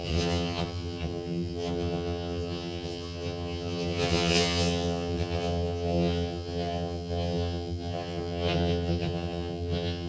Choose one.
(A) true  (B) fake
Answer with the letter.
B